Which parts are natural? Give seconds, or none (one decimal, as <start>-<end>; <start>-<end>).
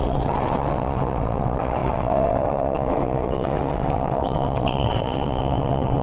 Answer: none